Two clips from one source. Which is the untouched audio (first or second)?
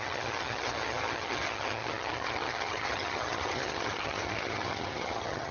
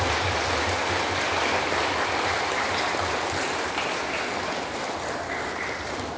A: second